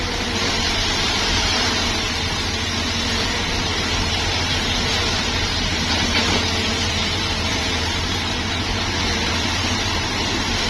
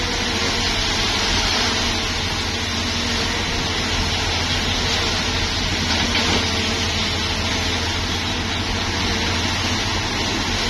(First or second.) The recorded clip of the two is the second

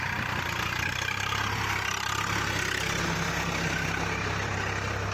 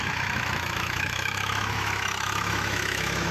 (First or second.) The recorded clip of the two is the first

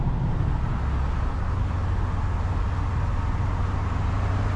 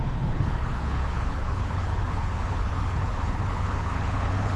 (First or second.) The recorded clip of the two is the first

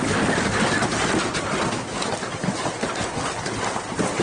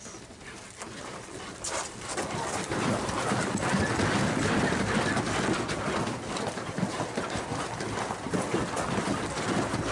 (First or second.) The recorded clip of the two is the second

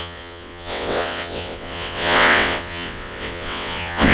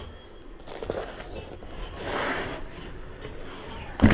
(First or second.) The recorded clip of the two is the second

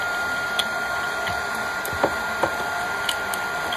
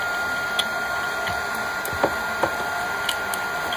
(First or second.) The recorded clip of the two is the second